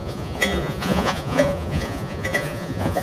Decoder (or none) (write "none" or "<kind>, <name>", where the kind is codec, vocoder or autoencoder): vocoder, Vocos